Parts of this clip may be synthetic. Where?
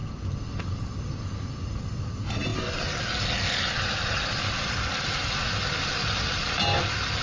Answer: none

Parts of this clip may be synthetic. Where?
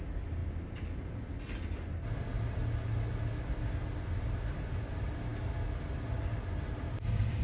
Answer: none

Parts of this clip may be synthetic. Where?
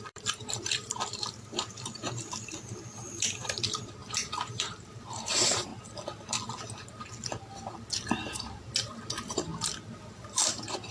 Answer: 0.0-5.7 (vocoder, BigVGAN v2); 8.1-9.5; 10.0-10.9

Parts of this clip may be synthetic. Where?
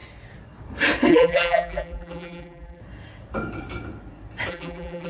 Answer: 1.1-2.8 (vocoder, BigVGAN v2); 4.5-5.1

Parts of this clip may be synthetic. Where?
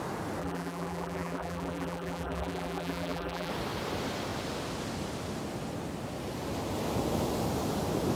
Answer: 0.4-3.5 (vocoder, BigVGAN v2)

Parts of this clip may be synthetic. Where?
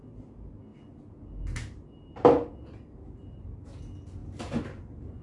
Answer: 4.2-5.2 (vocoder, BigVGAN v2)